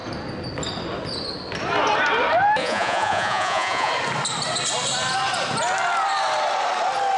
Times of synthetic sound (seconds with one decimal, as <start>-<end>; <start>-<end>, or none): 2.6-3.9